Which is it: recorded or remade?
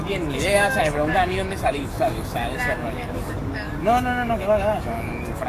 remade